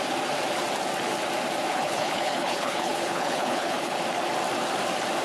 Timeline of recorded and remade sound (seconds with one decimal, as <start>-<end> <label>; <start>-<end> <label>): 0.0-1.7 recorded; 1.7-4.0 remade; 4.0-5.2 recorded